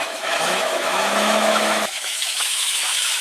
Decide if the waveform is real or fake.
fake